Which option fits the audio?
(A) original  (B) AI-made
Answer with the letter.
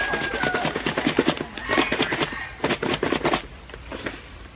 A